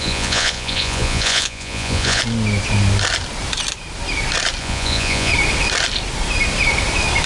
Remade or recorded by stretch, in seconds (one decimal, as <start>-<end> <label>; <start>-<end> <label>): 0.0-2.2 remade; 2.2-4.6 recorded; 4.6-5.3 remade; 5.3-7.3 recorded